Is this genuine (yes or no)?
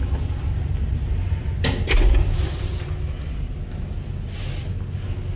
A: yes